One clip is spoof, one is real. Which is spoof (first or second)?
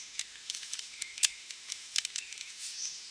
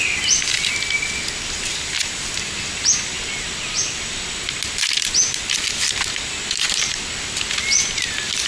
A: first